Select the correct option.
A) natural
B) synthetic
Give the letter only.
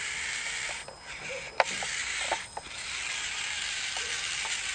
A